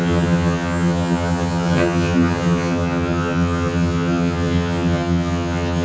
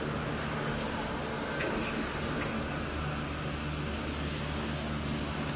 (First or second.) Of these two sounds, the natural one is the second